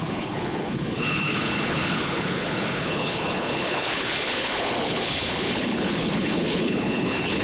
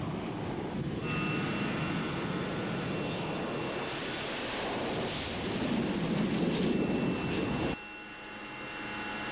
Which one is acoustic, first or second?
second